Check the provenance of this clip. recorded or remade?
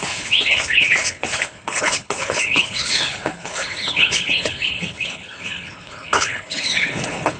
remade